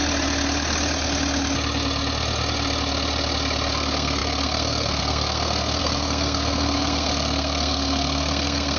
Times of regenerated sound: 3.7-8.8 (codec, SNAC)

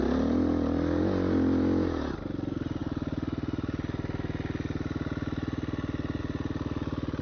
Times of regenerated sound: none

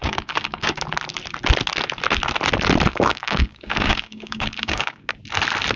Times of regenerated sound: 0.0-0.8 (codec, DAC); 2.9-5.1